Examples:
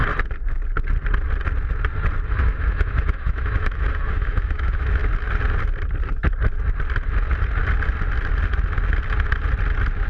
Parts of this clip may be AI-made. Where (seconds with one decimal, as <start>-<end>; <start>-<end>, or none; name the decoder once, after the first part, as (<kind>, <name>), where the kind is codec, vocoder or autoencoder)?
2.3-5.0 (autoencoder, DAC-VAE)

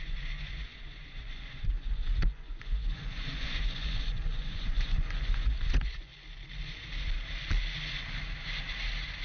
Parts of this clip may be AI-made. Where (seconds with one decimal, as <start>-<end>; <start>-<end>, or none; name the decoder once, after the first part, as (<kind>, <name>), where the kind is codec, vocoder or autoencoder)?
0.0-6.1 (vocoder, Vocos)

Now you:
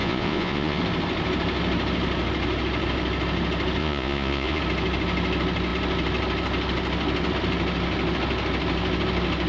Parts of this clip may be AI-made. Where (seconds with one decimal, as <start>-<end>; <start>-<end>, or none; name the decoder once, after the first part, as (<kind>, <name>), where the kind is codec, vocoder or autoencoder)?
0.0-0.8 (vocoder, Vocos); 3.8-4.6

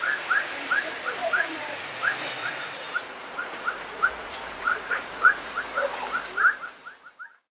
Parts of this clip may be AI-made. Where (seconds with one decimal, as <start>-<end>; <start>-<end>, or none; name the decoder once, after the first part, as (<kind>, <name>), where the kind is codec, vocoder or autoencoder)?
1.2-2.0 (vocoder, Vocos); 2.4-5.6

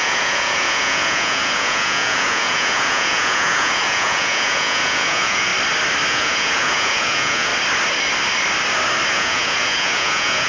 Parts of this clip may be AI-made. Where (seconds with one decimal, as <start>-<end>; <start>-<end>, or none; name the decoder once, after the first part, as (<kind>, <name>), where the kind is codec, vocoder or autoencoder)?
0.0-5.5 (vocoder, Vocos); 6.1-7.5; 9.1-10.5

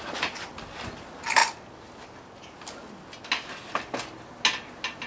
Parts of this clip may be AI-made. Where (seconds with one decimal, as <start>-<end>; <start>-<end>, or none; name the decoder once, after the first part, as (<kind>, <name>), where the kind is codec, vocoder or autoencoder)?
none

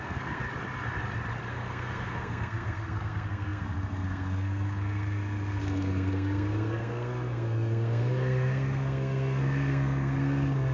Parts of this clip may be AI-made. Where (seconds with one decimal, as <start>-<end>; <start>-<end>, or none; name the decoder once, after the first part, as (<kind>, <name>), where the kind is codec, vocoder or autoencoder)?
0.0-0.4 (codec, SNAC); 1.5-10.7